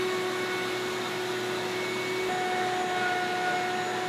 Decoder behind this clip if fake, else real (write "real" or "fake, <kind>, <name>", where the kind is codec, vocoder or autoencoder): real